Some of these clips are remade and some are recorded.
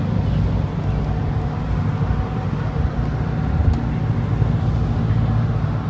recorded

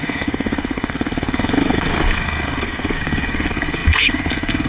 remade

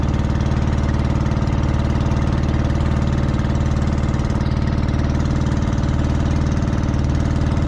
recorded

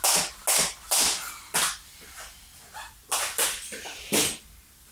recorded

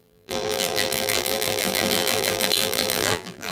remade